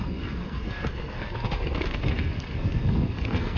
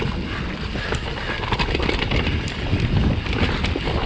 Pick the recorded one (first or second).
second